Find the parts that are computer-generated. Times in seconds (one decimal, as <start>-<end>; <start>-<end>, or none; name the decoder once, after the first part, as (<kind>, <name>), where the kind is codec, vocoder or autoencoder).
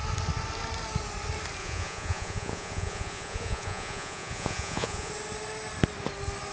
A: 1.6-5.1 (vocoder, Vocos)